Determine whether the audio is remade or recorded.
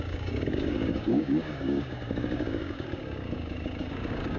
remade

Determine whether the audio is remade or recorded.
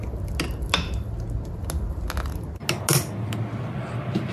recorded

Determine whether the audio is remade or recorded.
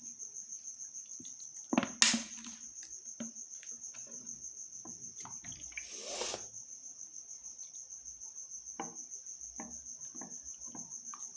recorded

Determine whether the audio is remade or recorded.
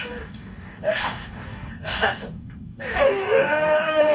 remade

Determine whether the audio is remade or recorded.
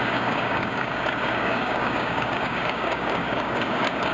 remade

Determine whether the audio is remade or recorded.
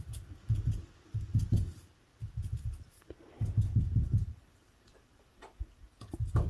recorded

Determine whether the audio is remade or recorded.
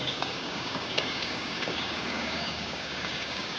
remade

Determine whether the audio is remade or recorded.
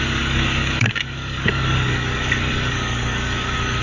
remade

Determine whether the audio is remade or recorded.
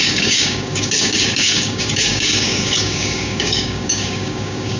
remade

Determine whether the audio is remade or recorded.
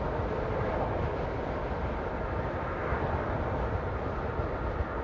recorded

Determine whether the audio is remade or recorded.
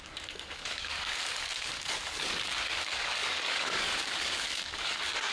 remade